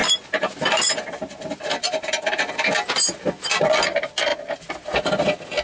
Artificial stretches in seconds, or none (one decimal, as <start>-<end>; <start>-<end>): 0.0-3.2; 4.3-5.1